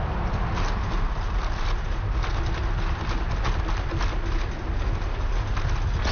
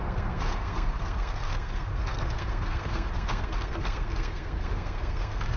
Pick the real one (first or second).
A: first